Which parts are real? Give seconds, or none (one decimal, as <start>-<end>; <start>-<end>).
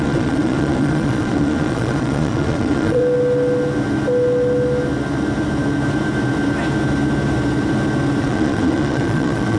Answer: 3.0-8.2